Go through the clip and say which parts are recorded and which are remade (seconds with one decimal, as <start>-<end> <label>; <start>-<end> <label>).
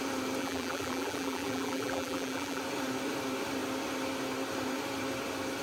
0.0-0.4 recorded; 0.4-2.6 remade; 2.6-5.6 recorded